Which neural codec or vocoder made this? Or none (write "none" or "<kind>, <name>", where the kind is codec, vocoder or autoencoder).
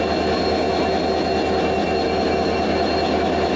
none